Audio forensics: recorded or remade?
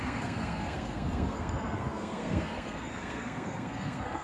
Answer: remade